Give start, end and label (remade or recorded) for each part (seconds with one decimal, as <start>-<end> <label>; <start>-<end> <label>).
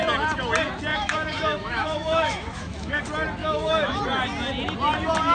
0.0-0.9 recorded; 0.9-3.0 remade; 3.0-3.4 recorded; 3.4-4.0 remade; 4.0-5.3 recorded